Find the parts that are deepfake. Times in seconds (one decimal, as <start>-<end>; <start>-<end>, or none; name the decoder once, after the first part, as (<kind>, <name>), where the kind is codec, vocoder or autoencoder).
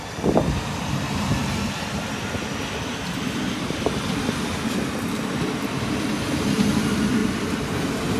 none